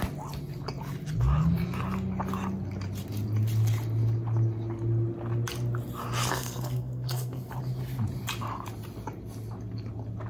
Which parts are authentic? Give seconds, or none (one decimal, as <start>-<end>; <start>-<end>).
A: 0.0-6.3; 7.5-10.3